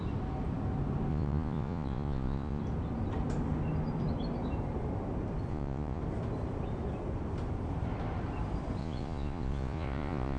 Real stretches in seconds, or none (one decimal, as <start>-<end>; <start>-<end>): 0.0-1.1; 2.6-5.5; 6.0-8.8